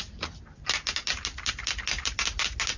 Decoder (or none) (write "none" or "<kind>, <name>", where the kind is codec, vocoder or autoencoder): none